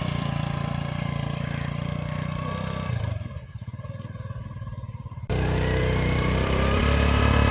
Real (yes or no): no